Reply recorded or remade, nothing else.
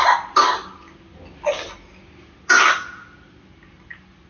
recorded